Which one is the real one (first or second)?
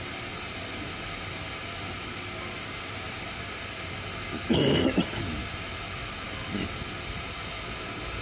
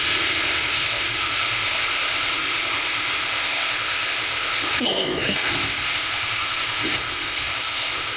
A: first